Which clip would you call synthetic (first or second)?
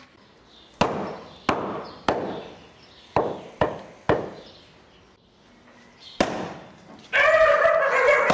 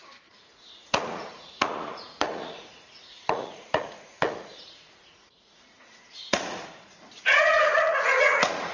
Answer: second